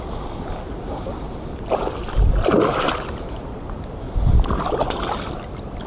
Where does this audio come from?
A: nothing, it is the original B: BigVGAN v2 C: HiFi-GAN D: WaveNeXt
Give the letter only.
A